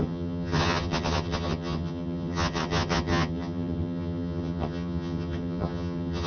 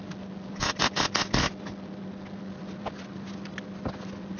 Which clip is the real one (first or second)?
second